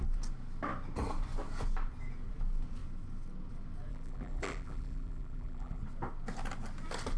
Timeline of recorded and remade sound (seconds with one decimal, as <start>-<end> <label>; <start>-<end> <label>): 0.0-3.9 recorded; 3.9-5.8 remade; 5.8-7.2 recorded